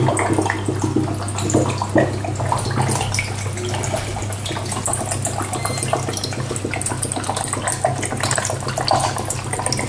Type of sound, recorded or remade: recorded